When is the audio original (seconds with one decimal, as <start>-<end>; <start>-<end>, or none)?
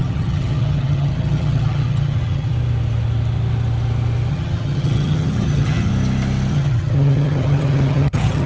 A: 2.5-4.3; 5.9-6.5